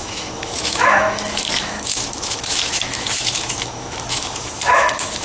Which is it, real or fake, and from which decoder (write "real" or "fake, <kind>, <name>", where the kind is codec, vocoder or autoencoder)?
fake, autoencoder, DAC-VAE